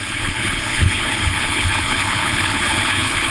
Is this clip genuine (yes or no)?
no